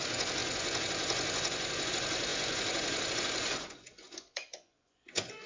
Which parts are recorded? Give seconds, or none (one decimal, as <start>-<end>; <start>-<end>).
none